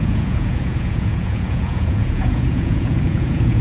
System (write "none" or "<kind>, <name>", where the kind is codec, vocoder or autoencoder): vocoder, Vocos